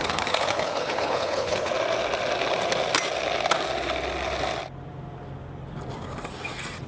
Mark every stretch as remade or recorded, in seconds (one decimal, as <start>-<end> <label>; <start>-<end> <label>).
0.0-1.7 remade; 1.7-6.9 recorded